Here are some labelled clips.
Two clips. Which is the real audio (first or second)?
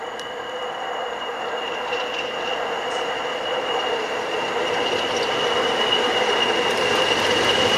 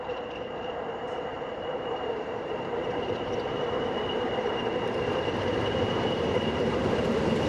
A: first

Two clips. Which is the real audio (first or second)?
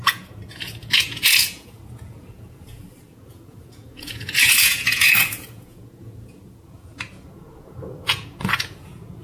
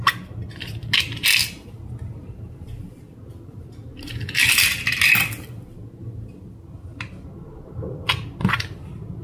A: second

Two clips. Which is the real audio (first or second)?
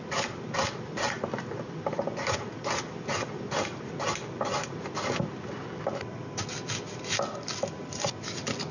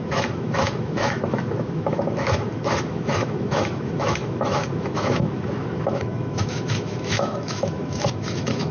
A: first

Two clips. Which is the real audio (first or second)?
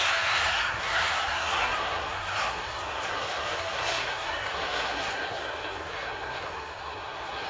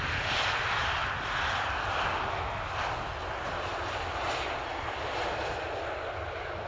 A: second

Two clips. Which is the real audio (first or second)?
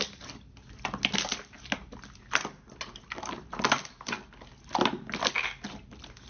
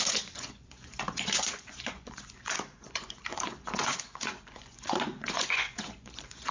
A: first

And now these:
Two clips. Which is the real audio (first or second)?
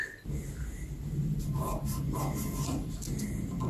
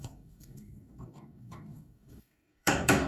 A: first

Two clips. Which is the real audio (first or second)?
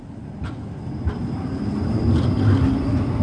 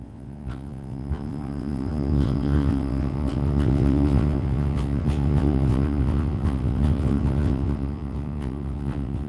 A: first